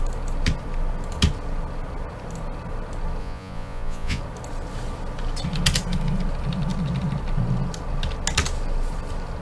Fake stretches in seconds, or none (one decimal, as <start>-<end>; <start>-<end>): 3.2-4.2